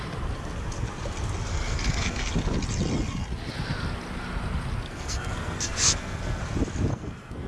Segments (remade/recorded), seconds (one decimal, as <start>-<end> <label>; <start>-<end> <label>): 0.0-1.5 recorded; 1.5-2.3 remade; 2.3-4.9 recorded; 4.9-6.4 remade; 6.4-6.9 recorded; 6.9-7.5 remade